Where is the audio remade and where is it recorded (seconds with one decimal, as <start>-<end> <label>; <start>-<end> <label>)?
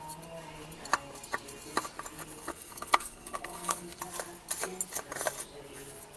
0.0-2.5 recorded; 2.5-4.0 remade; 4.0-6.2 recorded